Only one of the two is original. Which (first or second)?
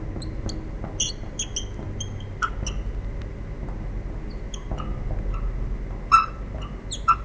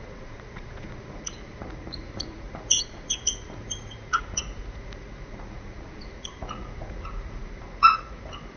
first